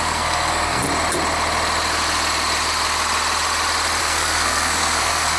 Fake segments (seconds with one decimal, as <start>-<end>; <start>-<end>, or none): 0.0-0.8; 4.0-5.4